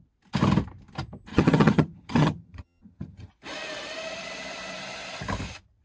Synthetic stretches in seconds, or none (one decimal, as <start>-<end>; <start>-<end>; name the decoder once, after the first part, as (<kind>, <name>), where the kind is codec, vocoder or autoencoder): 1.3-3.3 (vocoder, HiFi-GAN)